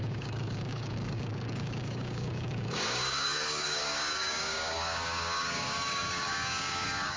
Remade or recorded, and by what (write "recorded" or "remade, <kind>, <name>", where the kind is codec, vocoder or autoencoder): remade, codec, DAC